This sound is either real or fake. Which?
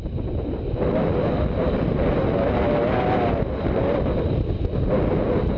real